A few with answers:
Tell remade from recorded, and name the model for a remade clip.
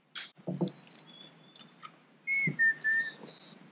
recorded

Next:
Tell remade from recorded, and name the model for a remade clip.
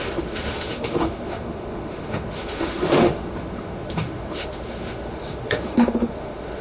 remade, autoencoder, DAC-VAE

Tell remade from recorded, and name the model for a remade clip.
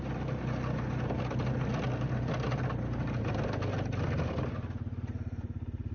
recorded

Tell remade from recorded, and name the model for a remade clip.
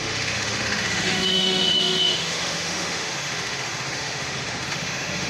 remade, autoencoder, DAC-VAE